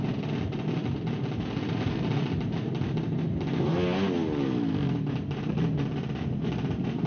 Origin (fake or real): real